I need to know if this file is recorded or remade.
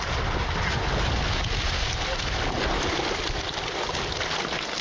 recorded